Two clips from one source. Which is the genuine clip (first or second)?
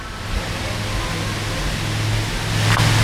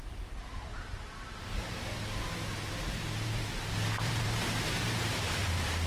first